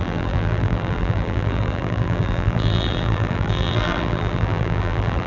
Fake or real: fake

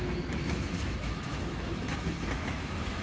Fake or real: fake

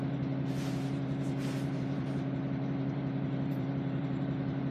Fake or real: fake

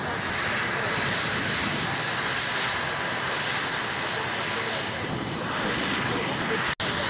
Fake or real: real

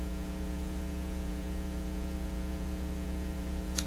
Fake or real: fake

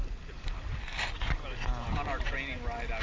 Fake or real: real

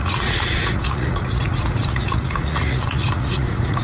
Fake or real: fake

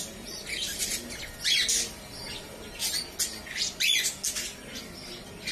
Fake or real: real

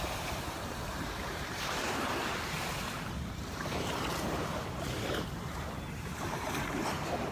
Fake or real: fake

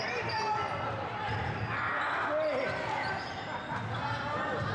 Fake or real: real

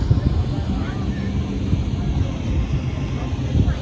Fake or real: real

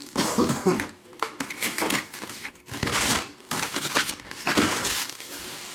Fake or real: fake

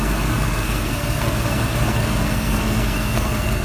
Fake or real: fake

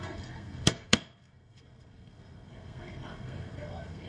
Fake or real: fake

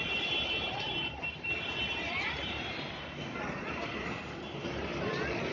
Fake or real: fake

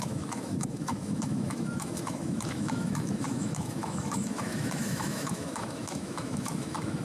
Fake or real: fake